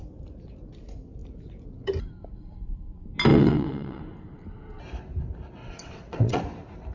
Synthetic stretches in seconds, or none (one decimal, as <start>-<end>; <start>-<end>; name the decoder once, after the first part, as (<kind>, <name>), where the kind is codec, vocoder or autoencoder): 3.3-4.0 (vocoder, WaveNeXt); 5.6-6.4

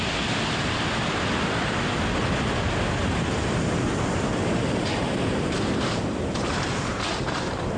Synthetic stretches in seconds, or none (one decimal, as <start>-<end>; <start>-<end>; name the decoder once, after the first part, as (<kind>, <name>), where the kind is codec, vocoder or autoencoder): 3.0-7.8 (vocoder, BigVGAN v2)

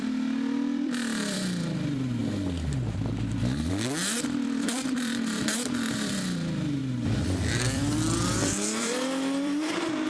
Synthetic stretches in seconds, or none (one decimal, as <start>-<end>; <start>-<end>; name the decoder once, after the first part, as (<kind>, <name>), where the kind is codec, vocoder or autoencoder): 0.0-2.2 (vocoder, BigVGAN v2); 3.7-6.8; 7.5-10.1

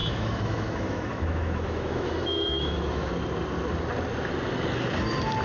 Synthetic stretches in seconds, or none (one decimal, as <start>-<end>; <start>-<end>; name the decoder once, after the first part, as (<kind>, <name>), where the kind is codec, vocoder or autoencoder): 0.0-3.1 (autoencoder, DAC-VAE)

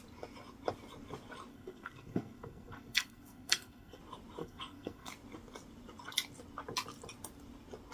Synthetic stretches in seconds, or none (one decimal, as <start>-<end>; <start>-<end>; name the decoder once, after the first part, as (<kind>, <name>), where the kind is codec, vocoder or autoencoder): 1.5-4.0 (codec, SNAC); 4.4-5.1

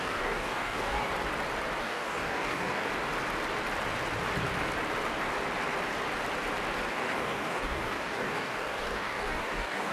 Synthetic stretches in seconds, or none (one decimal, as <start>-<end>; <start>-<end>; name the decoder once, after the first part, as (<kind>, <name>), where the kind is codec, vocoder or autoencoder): 0.0-1.1 (codec, DAC); 1.8-2.9; 6.9-9.9

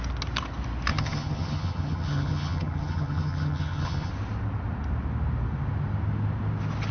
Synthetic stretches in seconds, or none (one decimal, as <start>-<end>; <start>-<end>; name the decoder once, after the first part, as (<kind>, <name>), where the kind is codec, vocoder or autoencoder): 0.9-4.1 (vocoder, HiFi-GAN)

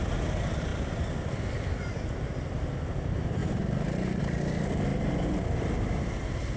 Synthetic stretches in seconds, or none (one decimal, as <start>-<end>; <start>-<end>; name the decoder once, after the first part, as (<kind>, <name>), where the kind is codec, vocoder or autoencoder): none